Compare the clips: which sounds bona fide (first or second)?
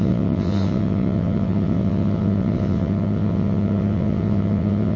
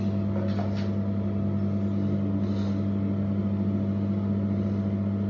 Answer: second